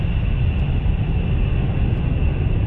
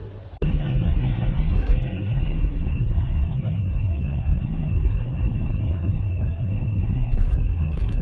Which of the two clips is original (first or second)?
first